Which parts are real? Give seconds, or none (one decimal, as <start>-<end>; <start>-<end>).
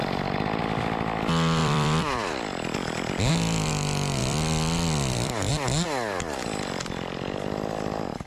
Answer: 0.6-1.6; 3.3-4.2; 5.5-8.3